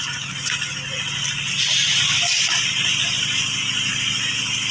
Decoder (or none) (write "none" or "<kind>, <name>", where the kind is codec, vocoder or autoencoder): none